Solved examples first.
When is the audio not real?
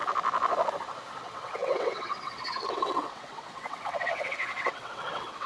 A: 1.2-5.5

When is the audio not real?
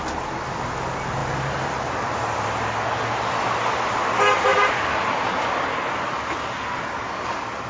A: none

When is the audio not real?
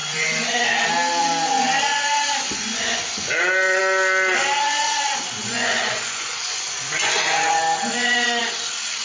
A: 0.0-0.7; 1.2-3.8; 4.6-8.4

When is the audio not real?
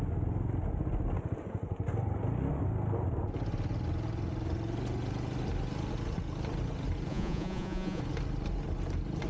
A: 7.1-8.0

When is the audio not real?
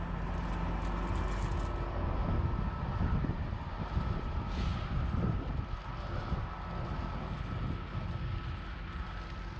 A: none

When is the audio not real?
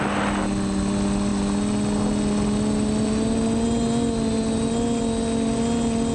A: none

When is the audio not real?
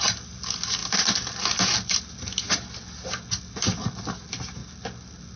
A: none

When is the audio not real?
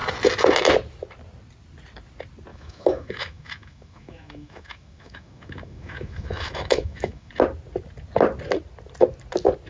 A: 2.5-7.3